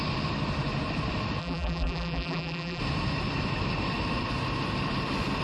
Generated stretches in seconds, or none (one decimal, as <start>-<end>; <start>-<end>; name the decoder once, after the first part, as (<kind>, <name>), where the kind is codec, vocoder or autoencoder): 1.4-2.8 (vocoder, BigVGAN v2)

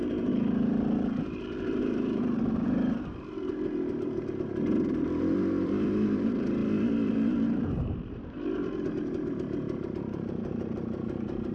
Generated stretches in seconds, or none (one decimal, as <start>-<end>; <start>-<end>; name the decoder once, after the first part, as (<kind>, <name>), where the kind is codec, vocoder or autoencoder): 0.0-6.6 (vocoder, BigVGAN v2); 7.1-11.5

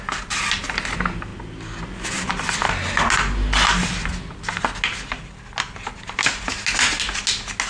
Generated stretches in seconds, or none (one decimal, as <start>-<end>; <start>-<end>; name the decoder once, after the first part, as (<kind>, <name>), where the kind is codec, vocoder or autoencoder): none

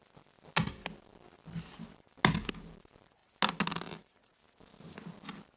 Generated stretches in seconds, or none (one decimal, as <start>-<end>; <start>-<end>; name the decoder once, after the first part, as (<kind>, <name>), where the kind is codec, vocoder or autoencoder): none

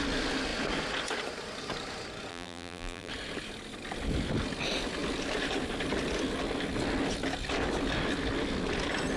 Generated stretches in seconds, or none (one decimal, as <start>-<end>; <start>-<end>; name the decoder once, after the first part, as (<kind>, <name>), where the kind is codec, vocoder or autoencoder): 2.3-3.1 (vocoder, BigVGAN v2)